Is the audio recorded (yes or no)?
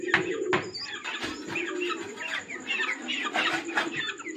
yes